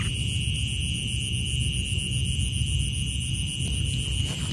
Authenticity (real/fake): real